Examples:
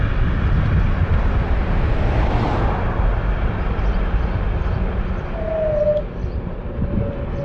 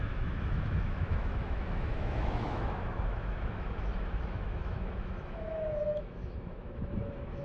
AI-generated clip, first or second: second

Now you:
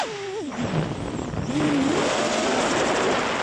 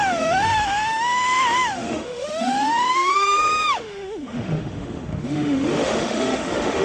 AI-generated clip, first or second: second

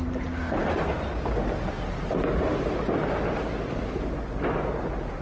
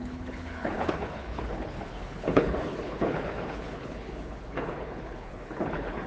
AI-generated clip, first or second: second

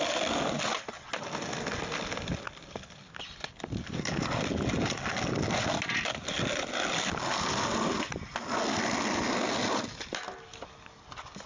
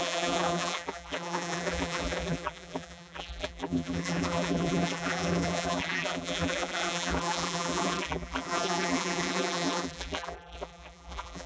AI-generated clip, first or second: second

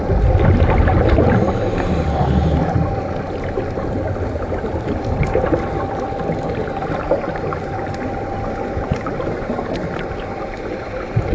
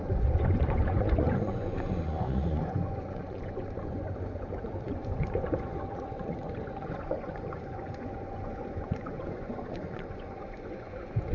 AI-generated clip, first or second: second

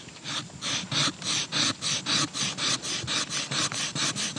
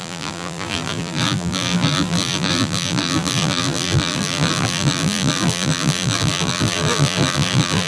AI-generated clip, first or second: second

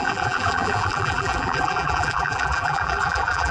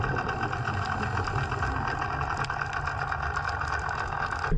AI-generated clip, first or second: first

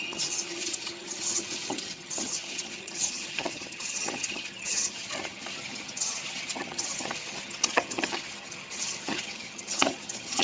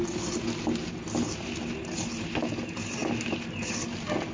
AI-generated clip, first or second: first